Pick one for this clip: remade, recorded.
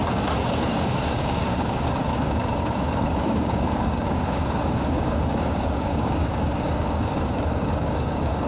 remade